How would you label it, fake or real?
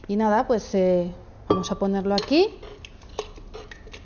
real